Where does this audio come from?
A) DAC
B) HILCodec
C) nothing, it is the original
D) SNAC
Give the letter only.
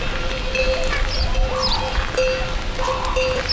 C